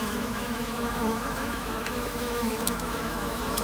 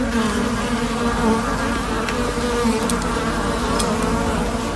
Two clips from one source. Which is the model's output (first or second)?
first